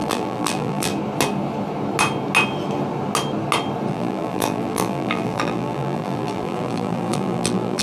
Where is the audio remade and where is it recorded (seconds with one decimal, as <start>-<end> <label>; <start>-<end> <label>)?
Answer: 0.0-0.9 remade; 0.9-3.9 recorded; 3.9-7.8 remade